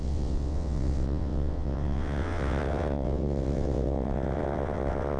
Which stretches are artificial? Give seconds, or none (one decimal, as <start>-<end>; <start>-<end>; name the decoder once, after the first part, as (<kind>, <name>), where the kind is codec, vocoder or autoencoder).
0.0-5.2 (vocoder, WaveNeXt)